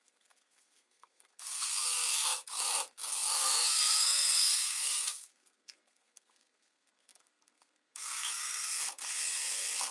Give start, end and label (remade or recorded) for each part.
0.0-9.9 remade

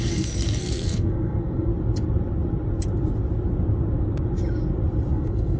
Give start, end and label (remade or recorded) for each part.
0.0-1.7 remade; 1.7-5.1 recorded; 5.1-5.6 remade

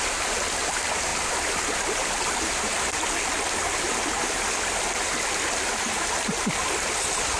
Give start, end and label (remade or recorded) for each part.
0.0-7.4 recorded

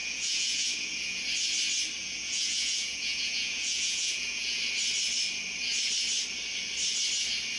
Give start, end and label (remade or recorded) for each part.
0.0-1.2 remade; 1.2-2.0 recorded; 2.0-4.6 remade; 4.6-7.6 recorded

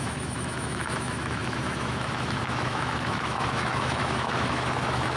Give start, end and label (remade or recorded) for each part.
0.0-5.2 remade

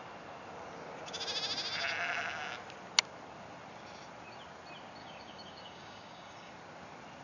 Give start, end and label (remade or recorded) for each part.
0.0-5.0 recorded; 5.0-6.5 remade; 6.5-7.2 recorded

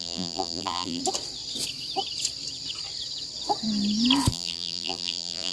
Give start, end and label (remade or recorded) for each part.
0.0-1.0 remade; 1.0-4.3 recorded; 4.3-5.5 remade

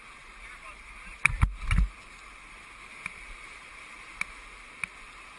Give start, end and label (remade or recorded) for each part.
0.0-5.4 recorded